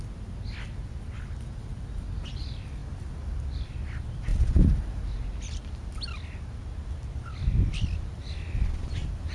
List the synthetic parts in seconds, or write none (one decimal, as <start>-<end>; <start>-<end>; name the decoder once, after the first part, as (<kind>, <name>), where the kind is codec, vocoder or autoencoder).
none